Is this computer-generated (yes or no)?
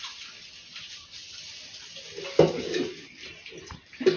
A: no